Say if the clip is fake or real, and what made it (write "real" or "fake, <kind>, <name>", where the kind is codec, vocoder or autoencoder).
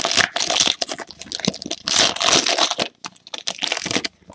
real